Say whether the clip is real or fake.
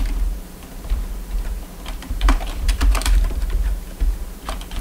fake